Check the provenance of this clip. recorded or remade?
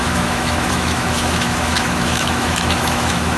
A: remade